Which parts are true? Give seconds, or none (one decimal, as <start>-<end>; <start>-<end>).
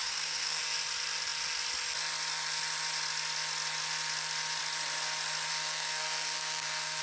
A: 0.6-5.5